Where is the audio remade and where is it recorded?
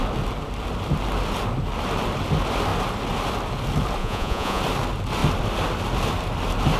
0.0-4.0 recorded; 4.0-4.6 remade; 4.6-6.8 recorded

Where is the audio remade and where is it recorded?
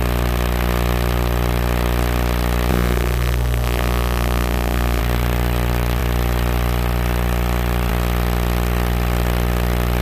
0.0-2.7 recorded; 2.7-5.0 remade; 5.0-10.0 recorded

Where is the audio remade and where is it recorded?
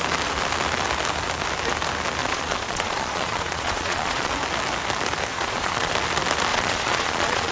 0.0-2.2 recorded; 2.2-4.3 remade; 4.3-5.3 recorded; 5.3-5.9 remade; 5.9-6.5 recorded; 6.5-7.5 remade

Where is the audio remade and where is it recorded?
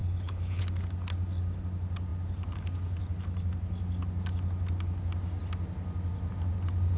0.0-0.6 remade; 0.6-7.0 recorded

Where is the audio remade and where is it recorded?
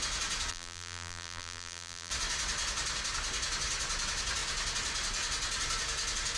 0.0-0.5 recorded; 0.5-2.1 remade; 2.1-6.4 recorded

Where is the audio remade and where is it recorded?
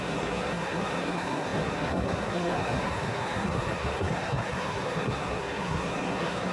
0.0-6.5 remade